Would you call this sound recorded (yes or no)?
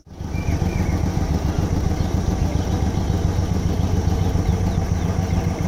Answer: yes